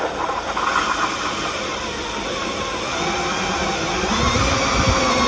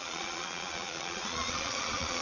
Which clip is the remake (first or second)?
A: second